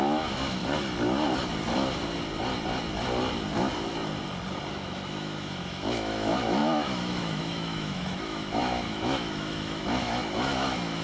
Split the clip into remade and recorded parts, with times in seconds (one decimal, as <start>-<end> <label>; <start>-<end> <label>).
0.0-0.6 remade; 0.6-4.7 recorded; 4.7-11.0 remade